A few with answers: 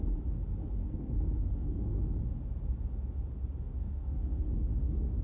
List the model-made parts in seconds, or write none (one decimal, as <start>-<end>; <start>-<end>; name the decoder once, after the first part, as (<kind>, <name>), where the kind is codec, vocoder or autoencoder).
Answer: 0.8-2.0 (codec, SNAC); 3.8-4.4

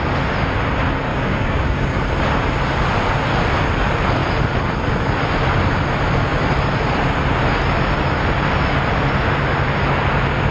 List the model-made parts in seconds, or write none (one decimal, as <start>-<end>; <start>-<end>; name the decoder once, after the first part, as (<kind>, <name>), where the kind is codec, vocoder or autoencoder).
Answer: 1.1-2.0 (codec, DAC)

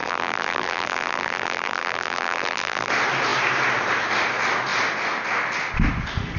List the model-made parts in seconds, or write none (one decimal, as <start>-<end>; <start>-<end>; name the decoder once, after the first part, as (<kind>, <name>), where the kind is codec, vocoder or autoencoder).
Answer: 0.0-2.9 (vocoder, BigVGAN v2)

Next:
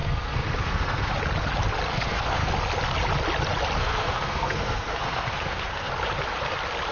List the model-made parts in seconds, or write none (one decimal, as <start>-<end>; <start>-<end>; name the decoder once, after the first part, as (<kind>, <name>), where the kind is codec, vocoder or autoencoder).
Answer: 0.0-1.1 (codec, SNAC); 1.9-2.5; 3.8-5.9

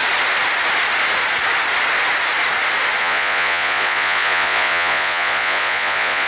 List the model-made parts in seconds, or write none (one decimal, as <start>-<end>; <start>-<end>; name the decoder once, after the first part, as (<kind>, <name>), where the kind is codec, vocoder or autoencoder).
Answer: 3.0-6.3 (vocoder, Vocos)

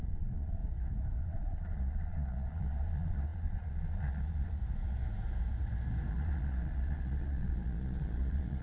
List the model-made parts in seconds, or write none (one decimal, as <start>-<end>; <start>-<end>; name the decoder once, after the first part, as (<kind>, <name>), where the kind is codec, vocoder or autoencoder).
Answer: 0.0-0.6 (vocoder, Vocos); 1.2-4.6; 6.1-8.6

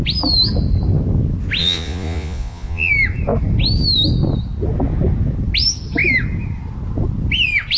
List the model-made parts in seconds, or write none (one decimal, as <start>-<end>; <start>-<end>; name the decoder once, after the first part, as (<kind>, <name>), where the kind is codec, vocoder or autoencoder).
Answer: 1.6-2.9 (vocoder, Vocos)